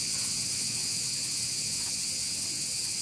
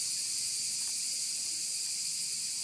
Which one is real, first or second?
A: second